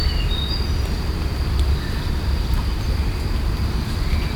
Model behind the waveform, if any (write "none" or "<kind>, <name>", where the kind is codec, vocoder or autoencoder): none